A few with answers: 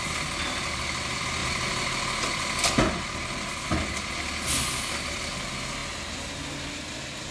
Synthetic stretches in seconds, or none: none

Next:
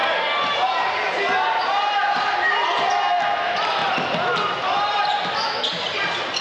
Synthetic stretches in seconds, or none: none